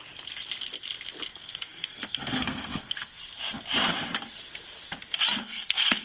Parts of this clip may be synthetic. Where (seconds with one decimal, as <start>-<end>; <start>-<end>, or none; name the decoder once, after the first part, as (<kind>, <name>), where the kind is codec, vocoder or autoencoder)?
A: 1.4-3.1 (codec, SNAC); 5.4-6.0